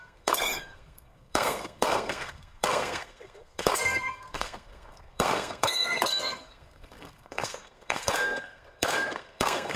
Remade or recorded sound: remade